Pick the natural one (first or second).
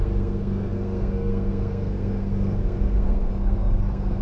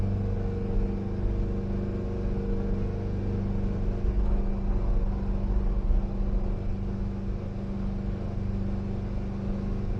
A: second